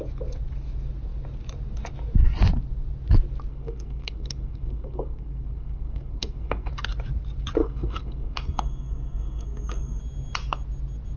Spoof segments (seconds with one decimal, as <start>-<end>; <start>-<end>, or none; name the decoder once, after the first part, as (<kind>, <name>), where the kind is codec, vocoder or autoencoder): 3.5-6.7 (codec, SNAC); 7.6-10.0